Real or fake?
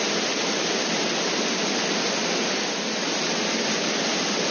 real